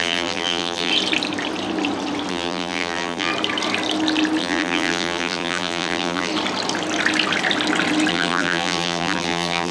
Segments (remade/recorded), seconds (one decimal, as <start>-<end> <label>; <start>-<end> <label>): 0.0-0.9 remade; 0.9-2.3 recorded; 2.3-3.3 remade; 3.3-4.4 recorded; 4.4-6.3 remade; 6.3-8.1 recorded; 8.1-9.7 remade